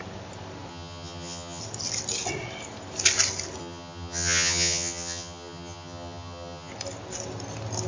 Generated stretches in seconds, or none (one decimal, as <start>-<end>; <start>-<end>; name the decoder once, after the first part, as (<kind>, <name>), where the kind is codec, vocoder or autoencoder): 0.7-1.6 (vocoder, HiFi-GAN); 3.6-6.7